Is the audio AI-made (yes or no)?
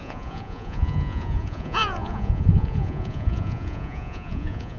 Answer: yes